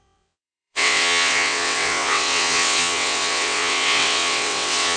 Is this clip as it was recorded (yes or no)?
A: no